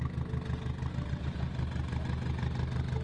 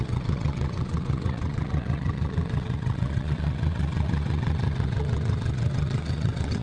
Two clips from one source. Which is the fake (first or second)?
second